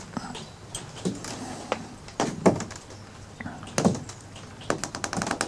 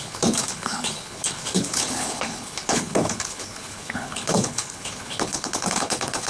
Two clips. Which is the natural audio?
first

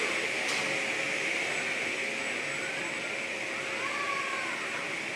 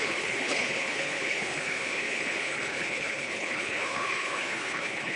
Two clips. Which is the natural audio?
first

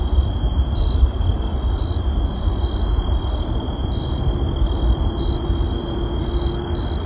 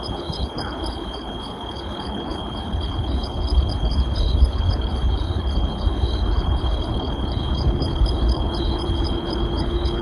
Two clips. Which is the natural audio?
first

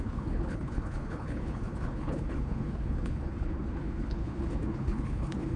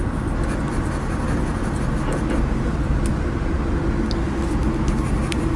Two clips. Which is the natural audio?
second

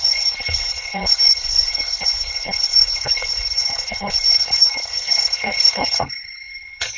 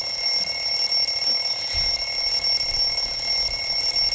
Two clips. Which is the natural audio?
second